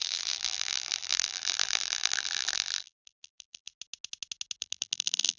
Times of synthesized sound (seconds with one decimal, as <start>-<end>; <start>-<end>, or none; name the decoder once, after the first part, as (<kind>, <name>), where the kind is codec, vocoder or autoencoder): 0.0-3.7 (vocoder, BigVGAN v2); 4.6-5.4